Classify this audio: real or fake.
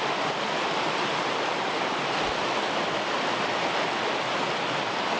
real